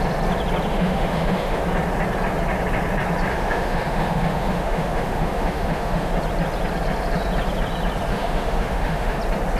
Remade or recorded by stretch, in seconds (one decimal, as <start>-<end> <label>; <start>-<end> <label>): 0.0-0.7 recorded; 0.7-1.6 remade; 1.6-3.3 recorded; 3.3-6.1 remade; 6.1-8.1 recorded; 8.1-9.2 remade; 9.2-9.6 recorded